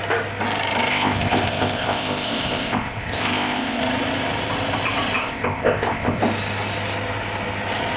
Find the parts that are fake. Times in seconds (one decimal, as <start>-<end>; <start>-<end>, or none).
0.9-3.8; 5.2-6.2